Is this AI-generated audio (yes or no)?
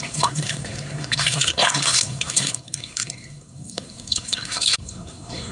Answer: yes